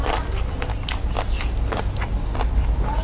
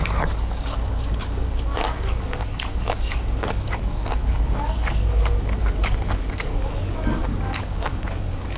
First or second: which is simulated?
second